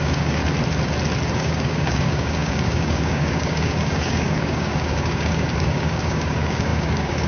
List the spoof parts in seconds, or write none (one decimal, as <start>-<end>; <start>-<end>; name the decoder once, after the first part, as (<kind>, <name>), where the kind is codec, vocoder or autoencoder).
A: 0.0-0.4 (codec, DAC); 1.3-7.3

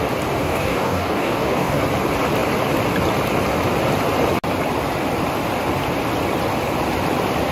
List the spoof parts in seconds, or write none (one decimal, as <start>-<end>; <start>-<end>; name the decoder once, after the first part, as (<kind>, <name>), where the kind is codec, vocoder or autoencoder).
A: 0.4-1.8 (codec, DAC)

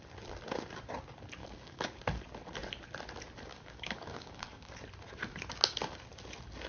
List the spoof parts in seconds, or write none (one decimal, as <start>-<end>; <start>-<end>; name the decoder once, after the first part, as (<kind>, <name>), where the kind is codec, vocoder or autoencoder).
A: 1.4-2.0 (codec, DAC); 3.5-4.7

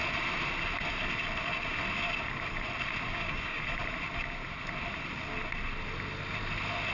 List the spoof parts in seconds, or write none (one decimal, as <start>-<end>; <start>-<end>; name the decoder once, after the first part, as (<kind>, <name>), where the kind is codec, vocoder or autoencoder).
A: 3.1-3.6 (codec, DAC)

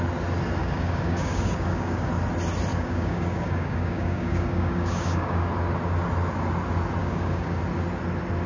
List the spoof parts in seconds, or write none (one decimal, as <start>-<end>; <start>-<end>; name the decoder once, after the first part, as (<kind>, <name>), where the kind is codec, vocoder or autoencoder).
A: 0.6-2.1 (codec, DAC); 2.7-5.5; 7.0-7.6